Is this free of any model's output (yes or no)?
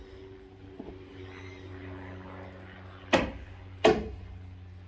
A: yes